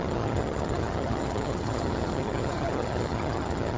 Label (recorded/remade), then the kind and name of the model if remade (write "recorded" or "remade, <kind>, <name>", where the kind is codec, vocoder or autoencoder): remade, vocoder, HiFi-GAN